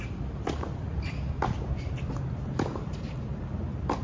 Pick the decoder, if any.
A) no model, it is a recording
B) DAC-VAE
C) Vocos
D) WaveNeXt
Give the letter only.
A